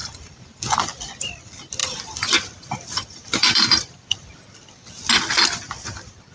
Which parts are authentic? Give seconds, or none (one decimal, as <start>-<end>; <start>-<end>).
1.2-1.8; 4.9-6.3